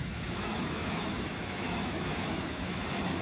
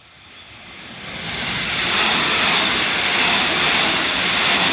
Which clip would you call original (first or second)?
second